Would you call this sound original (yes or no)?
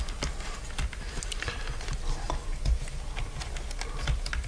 yes